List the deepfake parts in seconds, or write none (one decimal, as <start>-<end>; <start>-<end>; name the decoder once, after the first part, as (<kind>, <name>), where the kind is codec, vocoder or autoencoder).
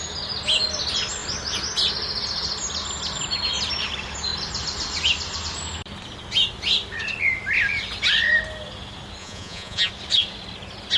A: 9.2-9.9 (vocoder, Vocos)